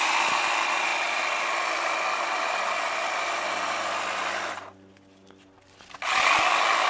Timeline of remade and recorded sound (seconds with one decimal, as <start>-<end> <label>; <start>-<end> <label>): 0.0-6.9 recorded